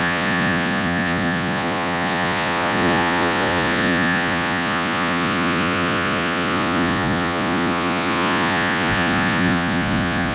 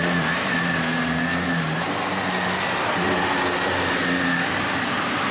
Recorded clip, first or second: second